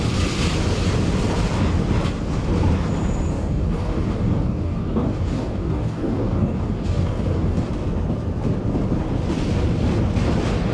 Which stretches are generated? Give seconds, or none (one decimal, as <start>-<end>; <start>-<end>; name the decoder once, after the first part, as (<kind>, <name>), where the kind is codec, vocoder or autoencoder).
3.3-7.7 (codec, DAC)